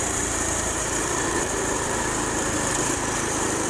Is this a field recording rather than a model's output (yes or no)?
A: no